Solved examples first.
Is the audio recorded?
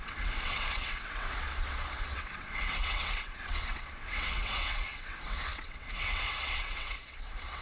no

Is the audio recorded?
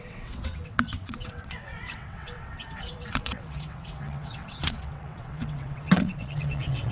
no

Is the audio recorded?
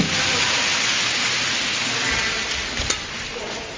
yes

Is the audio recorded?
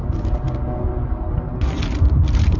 yes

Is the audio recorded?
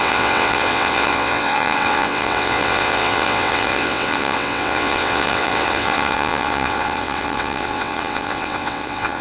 no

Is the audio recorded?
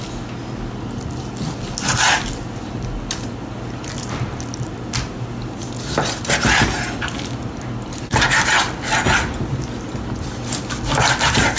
yes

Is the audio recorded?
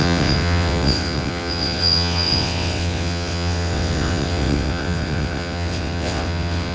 no